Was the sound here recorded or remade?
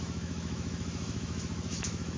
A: remade